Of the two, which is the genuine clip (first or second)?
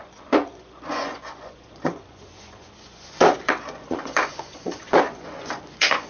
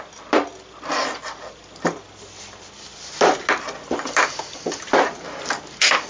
second